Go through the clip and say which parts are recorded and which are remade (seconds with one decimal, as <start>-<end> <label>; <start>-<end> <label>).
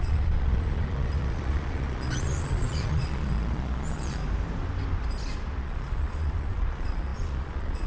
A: 0.0-4.2 remade; 4.2-5.6 recorded; 5.6-7.9 remade